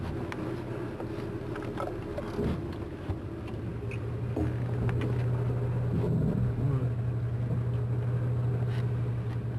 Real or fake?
real